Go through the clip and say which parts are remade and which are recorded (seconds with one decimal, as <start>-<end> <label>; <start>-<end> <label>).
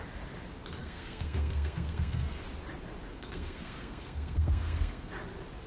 0.0-0.8 recorded; 0.8-2.4 remade; 2.4-3.1 recorded; 3.1-5.1 remade; 5.1-5.7 recorded